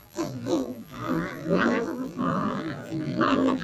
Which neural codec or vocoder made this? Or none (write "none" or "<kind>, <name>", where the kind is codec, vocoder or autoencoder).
vocoder, BigVGAN v2